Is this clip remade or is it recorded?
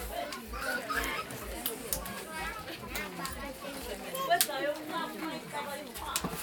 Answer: recorded